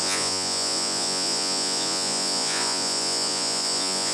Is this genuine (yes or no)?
no